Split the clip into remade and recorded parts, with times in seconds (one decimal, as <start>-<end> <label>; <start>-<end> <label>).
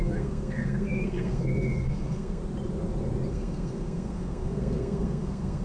0.0-2.4 remade; 2.4-3.3 recorded; 3.3-5.6 remade